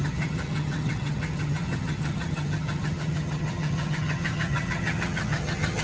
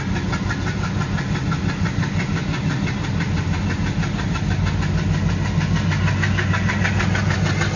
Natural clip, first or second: second